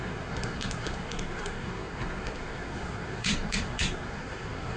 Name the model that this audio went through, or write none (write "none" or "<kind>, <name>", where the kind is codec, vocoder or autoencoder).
codec, SNAC